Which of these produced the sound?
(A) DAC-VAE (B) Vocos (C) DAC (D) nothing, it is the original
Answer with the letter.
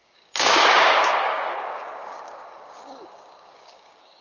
C